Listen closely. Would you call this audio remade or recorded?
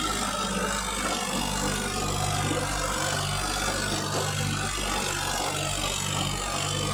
recorded